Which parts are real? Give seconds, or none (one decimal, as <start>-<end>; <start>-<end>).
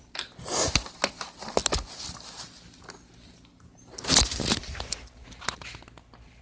0.0-6.4